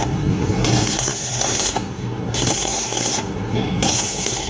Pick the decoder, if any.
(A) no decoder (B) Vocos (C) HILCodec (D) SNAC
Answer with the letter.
D